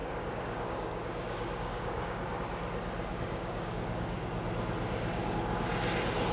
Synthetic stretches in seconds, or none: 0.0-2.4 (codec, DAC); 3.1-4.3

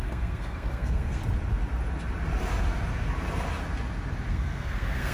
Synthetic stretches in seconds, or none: 0.0-1.2 (codec, SNAC); 4.3-5.1